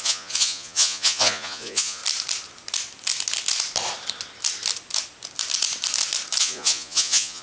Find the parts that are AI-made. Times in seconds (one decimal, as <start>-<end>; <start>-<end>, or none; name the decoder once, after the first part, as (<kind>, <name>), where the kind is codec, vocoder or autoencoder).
0.0-2.0 (vocoder, Vocos); 6.4-7.4